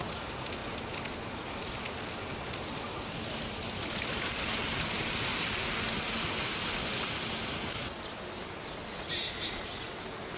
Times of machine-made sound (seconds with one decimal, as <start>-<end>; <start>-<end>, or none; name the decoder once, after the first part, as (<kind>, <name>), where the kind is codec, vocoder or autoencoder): none

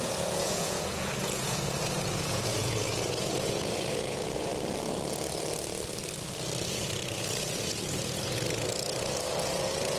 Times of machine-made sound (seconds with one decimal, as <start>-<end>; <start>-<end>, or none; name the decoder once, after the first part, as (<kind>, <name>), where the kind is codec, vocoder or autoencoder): 0.0-4.5 (vocoder, Vocos); 6.7-10.0

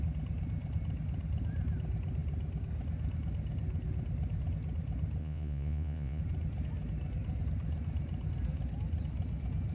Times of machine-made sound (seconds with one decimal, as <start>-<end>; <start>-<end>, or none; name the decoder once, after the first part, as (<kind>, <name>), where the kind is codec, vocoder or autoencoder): 5.2-6.2 (vocoder, Vocos)

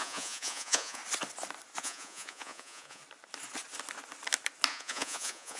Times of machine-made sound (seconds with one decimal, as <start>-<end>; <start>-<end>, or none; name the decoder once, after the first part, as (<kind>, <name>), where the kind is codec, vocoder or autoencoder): 0.0-1.0 (vocoder, Vocos); 1.8-3.0; 4.7-5.6

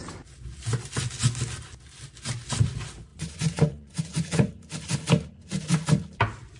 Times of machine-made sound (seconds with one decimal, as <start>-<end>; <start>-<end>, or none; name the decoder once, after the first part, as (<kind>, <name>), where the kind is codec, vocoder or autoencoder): 3.1-4.5 (vocoder, Vocos)

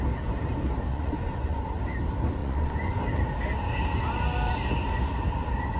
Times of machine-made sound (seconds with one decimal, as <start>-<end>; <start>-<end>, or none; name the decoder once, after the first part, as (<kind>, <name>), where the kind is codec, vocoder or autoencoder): 0.9-1.6 (vocoder, Vocos); 2.4-2.9

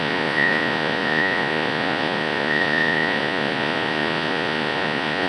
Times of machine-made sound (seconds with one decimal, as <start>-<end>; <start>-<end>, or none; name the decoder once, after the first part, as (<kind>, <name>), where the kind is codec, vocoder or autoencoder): 0.0-5.3 (vocoder, Vocos)